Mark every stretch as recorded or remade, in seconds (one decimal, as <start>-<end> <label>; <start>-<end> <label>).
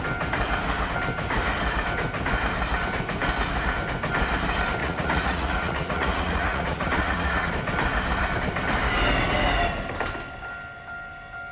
0.0-4.8 recorded; 4.8-7.5 remade; 7.5-11.5 recorded